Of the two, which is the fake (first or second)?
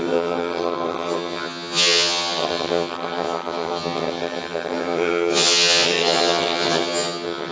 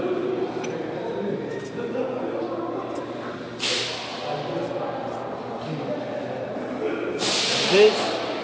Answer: first